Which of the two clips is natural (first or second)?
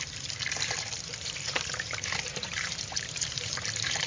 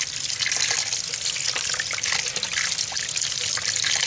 second